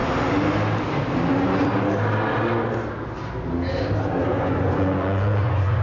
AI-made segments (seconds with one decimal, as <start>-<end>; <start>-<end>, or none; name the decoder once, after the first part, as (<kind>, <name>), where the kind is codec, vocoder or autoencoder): 4.3-5.8 (vocoder, Vocos)